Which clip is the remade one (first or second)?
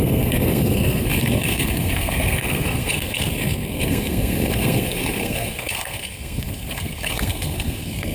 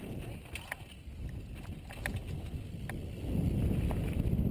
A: first